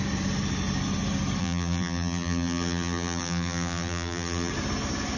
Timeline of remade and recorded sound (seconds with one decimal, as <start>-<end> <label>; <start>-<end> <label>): 0.0-1.4 recorded; 1.4-4.5 remade; 4.5-5.2 recorded